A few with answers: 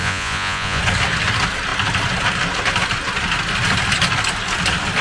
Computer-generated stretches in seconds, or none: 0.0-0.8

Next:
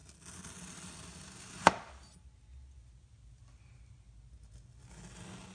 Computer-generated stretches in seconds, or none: none